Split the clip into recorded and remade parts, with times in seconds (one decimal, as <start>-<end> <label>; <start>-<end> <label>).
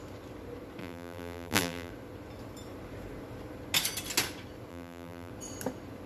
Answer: 0.0-0.8 recorded; 0.8-1.9 remade; 1.9-4.7 recorded; 4.7-5.3 remade; 5.3-6.1 recorded